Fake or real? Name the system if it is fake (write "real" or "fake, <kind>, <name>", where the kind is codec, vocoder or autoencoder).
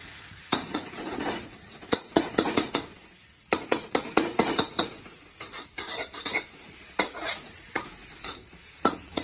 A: fake, vocoder, Vocos